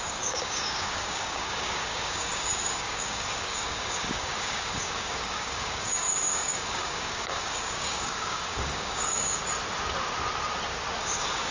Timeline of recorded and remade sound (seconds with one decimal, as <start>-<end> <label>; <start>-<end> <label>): 0.0-9.4 remade; 9.4-11.0 recorded; 11.0-11.5 remade